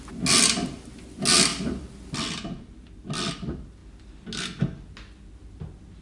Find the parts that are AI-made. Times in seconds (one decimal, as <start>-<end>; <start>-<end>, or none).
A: none